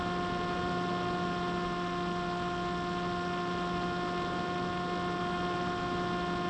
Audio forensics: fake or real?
real